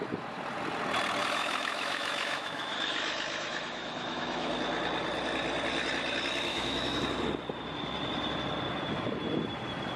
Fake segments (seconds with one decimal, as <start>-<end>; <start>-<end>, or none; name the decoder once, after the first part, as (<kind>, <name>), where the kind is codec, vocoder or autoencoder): 1.2-4.5 (autoencoder, DAC-VAE); 6.5-7.0